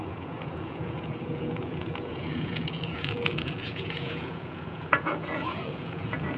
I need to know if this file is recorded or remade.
remade